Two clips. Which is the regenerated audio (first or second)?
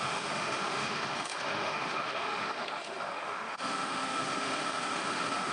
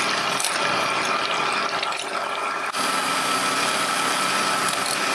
first